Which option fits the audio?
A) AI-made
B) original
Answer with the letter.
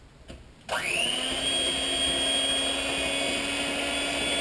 B